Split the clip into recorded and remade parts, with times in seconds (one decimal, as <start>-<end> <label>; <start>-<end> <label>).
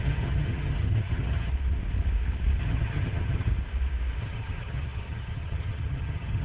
0.0-1.5 remade; 1.5-2.6 recorded; 2.6-3.5 remade; 3.5-4.2 recorded; 4.2-6.4 remade